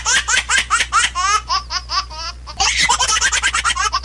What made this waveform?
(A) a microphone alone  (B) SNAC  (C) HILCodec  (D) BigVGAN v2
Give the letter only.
A